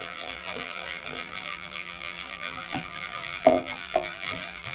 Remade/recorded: remade